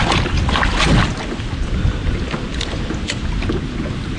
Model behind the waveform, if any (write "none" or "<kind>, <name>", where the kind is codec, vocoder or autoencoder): none